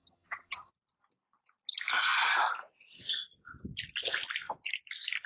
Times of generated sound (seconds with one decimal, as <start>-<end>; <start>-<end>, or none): 0.0-0.7